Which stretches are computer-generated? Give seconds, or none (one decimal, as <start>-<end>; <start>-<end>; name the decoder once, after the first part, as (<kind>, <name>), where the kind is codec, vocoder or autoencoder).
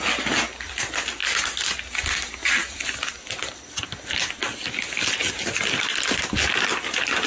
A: none